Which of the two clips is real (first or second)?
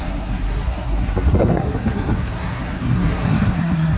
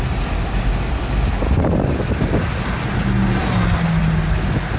second